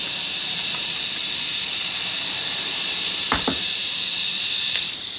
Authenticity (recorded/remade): remade